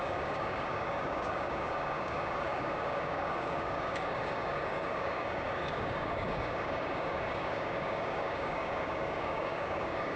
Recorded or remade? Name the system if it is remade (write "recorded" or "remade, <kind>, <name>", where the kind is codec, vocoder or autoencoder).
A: remade, codec, DAC